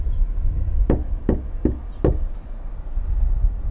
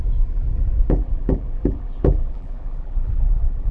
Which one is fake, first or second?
second